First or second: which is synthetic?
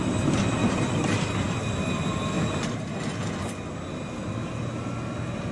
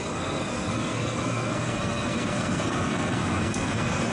second